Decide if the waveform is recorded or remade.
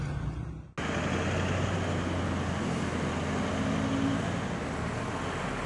recorded